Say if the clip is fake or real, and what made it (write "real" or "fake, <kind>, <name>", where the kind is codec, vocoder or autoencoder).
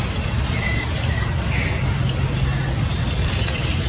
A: real